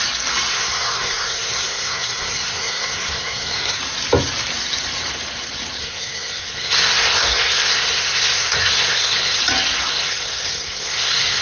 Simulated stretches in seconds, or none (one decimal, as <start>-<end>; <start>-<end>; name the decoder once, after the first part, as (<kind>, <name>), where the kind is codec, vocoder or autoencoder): 0.5-3.8 (codec, SNAC); 5.8-9.4; 9.9-11.4